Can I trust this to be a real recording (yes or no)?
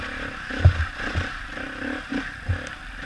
yes